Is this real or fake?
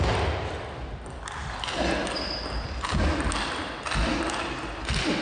real